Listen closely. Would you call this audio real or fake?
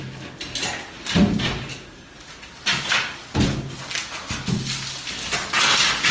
real